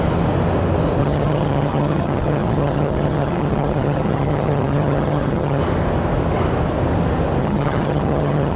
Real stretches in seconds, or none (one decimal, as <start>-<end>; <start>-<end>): 0.0-1.0; 5.6-7.4